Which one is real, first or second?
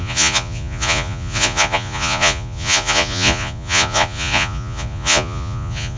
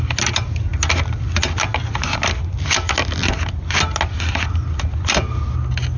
second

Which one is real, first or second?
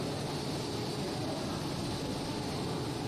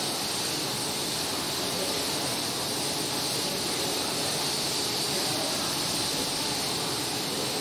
first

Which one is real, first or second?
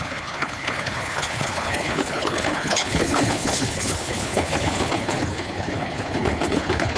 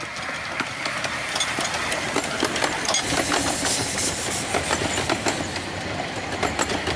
second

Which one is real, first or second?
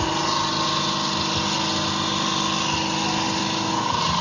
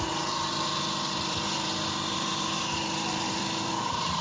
first